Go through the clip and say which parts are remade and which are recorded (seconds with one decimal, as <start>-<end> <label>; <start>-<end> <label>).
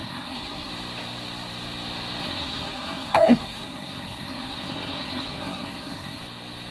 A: 0.0-0.7 remade; 0.7-2.2 recorded; 2.2-6.2 remade; 6.2-6.7 recorded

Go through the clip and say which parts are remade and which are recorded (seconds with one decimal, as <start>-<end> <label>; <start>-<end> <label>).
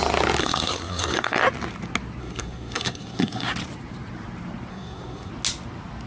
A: 0.0-0.4 recorded; 0.4-1.4 remade; 1.4-2.2 recorded; 2.2-3.5 remade; 3.5-4.7 recorded; 4.7-5.3 remade; 5.3-6.1 recorded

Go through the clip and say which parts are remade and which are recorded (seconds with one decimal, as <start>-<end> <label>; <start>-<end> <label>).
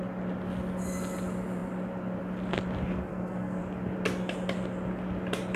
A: 0.0-3.1 recorded; 3.1-3.6 remade; 3.6-5.6 recorded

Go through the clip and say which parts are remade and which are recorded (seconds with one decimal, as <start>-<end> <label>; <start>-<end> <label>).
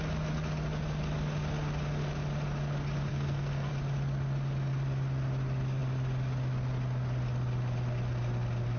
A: 0.0-3.1 recorded; 3.1-3.7 remade; 3.7-8.8 recorded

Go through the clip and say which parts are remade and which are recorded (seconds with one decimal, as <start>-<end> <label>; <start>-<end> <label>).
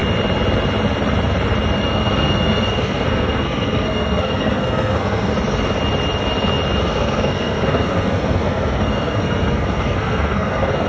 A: 0.0-1.8 recorded; 1.8-5.3 remade; 5.3-6.8 recorded; 6.8-10.9 remade